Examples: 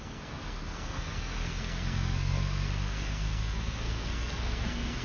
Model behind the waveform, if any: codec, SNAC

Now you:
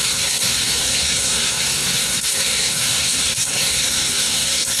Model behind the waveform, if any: codec, SNAC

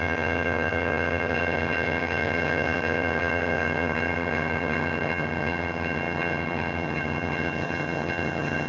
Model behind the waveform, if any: vocoder, HiFi-GAN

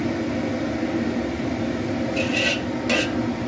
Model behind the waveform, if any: none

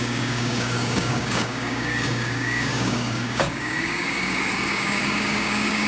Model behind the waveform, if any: codec, DAC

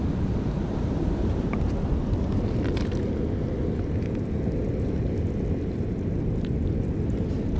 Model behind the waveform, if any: none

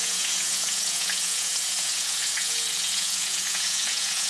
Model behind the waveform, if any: vocoder, Vocos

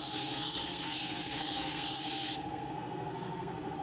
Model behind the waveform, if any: codec, SNAC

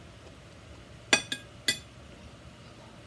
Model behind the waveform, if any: none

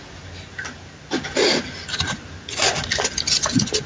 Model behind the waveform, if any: none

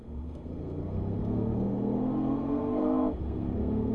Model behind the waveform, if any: codec, SNAC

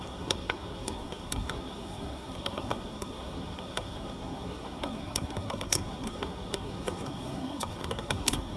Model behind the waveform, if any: codec, SNAC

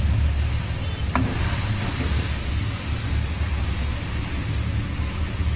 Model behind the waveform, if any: none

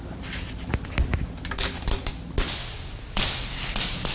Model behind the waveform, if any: none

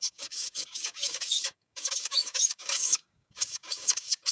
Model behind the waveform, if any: codec, DAC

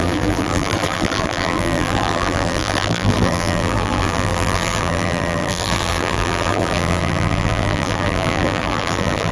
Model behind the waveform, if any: vocoder, BigVGAN v2